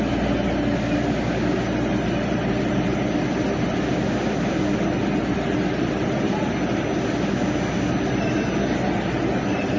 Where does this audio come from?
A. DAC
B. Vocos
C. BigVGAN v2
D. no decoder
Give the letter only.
D